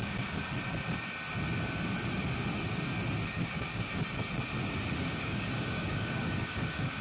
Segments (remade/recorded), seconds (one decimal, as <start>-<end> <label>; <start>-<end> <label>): 0.0-0.4 remade; 0.4-3.4 recorded; 3.4-3.9 remade; 3.9-5.0 recorded; 5.0-7.0 remade